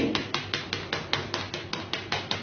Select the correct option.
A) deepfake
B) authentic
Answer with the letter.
B